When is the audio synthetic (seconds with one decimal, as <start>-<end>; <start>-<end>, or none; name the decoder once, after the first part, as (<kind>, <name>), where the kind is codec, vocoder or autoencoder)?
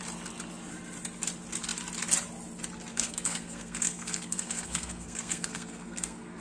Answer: 2.9-6.4 (codec, SNAC)